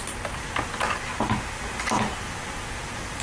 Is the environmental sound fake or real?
real